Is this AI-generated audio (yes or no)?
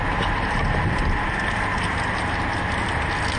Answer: no